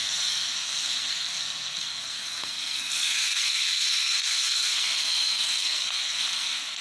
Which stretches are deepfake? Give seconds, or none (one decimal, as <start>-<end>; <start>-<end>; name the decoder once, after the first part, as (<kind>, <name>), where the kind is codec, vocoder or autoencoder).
0.0-6.8 (codec, SNAC)